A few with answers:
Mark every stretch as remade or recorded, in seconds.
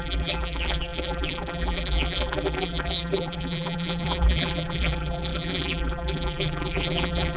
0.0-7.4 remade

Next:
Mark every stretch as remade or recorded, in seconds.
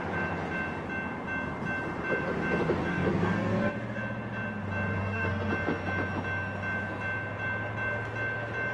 0.0-2.8 recorded; 2.8-3.7 remade; 3.7-5.0 recorded; 5.0-5.5 remade; 5.5-8.7 recorded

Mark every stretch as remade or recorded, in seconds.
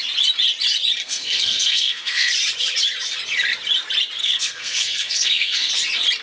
0.0-1.0 recorded; 1.0-2.3 remade; 2.3-4.2 recorded; 4.2-5.7 remade; 5.7-6.2 recorded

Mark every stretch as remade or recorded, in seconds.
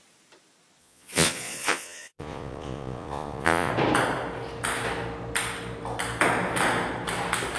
0.0-0.8 recorded; 0.8-3.7 remade; 3.7-7.6 recorded